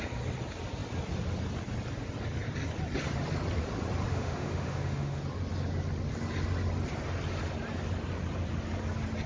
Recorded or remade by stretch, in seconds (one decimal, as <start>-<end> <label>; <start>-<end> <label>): 0.0-4.1 recorded; 4.1-5.2 remade; 5.2-9.3 recorded